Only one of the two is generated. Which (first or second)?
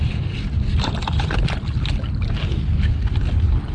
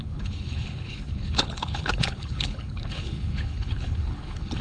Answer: second